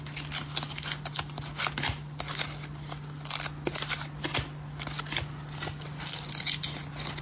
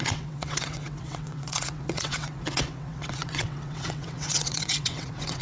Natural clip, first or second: first